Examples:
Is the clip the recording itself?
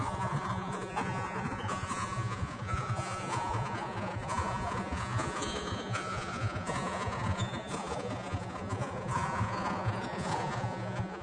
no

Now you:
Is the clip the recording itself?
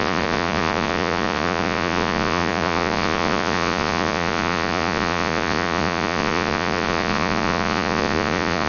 no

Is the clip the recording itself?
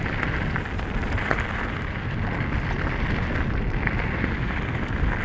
yes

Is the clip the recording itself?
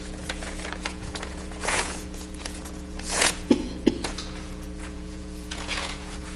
no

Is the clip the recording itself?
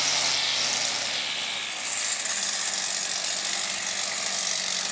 yes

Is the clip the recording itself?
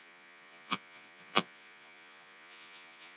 no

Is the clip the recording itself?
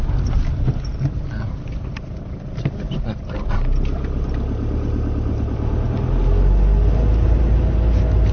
yes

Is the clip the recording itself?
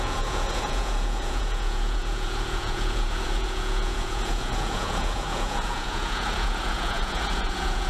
no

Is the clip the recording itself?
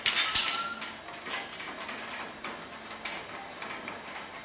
yes